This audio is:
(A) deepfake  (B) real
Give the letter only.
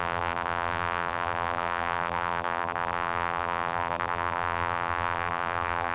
A